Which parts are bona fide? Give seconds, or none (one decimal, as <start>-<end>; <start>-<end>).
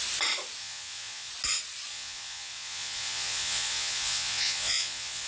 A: 0.0-0.6; 1.3-1.9